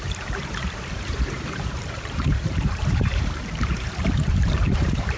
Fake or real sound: fake